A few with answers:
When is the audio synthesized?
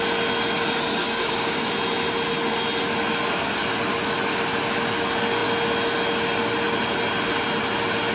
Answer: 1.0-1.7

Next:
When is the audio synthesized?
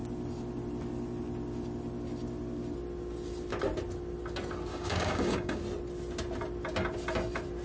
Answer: 4.7-5.6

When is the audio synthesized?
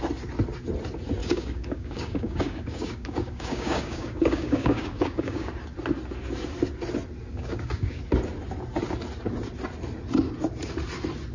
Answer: 1.2-5.5; 7.3-8.0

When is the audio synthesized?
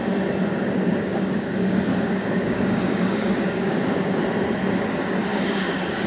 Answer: 0.5-4.2; 5.3-6.1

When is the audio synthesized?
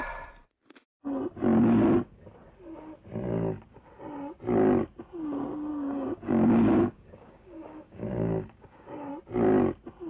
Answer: 5.7-9.1